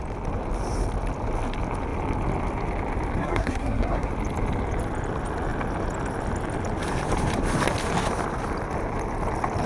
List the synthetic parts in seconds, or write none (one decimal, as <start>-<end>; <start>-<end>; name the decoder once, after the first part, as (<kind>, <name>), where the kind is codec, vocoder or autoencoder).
3.2-4.1 (codec, SNAC)